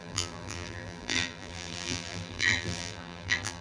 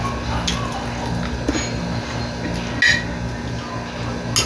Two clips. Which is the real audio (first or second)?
second